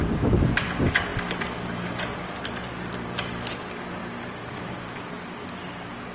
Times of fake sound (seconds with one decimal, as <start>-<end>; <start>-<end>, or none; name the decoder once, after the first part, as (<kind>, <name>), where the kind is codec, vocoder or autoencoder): 4.0-5.0 (vocoder, BigVGAN v2)

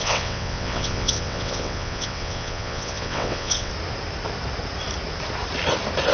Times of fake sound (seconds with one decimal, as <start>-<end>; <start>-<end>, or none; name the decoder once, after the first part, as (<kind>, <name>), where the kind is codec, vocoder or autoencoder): 0.0-3.7 (vocoder, WaveNeXt)

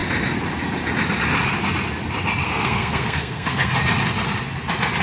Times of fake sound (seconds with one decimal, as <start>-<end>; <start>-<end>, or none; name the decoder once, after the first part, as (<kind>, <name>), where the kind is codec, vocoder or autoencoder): 2.4-3.7 (codec, SNAC)

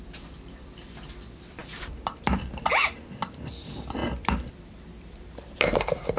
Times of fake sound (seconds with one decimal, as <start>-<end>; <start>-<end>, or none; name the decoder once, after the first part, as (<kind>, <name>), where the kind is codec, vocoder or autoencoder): 0.0-1.6 (vocoder, BigVGAN v2); 2.2-6.2

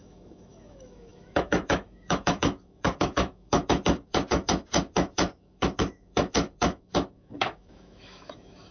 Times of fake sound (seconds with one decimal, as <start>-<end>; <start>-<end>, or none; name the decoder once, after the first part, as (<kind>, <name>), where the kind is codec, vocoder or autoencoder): 0.0-8.7 (autoencoder, DAC-VAE)